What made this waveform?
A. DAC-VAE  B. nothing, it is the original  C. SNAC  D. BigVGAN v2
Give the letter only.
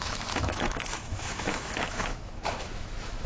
A